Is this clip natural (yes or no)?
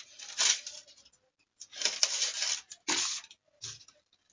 yes